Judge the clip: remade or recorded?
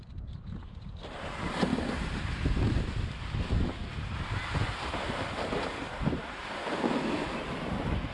recorded